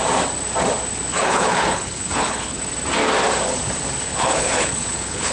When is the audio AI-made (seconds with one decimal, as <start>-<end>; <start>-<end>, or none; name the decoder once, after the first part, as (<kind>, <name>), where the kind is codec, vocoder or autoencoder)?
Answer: 1.1-2.6 (codec, HILCodec); 4.1-5.3

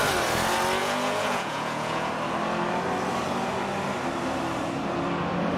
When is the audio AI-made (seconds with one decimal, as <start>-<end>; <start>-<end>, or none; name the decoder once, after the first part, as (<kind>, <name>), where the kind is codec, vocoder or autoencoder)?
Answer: 0.8-2.1 (vocoder, Vocos)

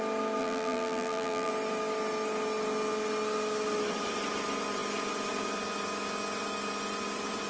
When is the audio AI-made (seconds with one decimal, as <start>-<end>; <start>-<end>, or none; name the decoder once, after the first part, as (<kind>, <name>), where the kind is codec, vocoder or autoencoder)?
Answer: 0.4-1.5 (vocoder, BigVGAN v2)

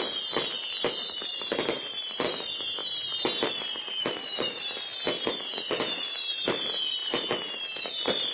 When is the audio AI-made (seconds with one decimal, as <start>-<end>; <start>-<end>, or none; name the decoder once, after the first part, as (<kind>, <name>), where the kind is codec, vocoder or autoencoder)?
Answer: 0.0-2.8 (vocoder, BigVGAN v2); 3.5-8.3

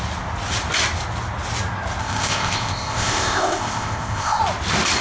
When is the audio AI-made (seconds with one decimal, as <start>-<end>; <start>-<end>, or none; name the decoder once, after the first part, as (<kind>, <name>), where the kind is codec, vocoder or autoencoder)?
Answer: 2.0-4.4 (codec, ZipCodec)

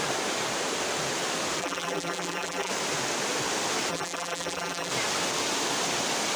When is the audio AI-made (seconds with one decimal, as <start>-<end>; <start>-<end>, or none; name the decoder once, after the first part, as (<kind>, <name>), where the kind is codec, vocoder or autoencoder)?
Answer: 1.6-2.7 (vocoder, BigVGAN v2); 3.9-4.9

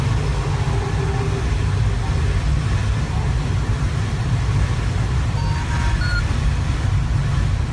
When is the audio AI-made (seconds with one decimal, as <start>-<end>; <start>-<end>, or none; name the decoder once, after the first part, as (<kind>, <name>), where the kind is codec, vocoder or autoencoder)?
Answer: 2.8-7.2 (vocoder, BigVGAN v2)

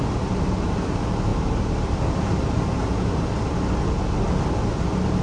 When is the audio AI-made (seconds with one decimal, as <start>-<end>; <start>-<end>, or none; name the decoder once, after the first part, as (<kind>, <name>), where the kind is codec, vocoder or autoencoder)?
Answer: none